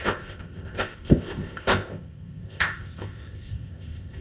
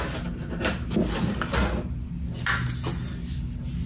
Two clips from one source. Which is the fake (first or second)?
first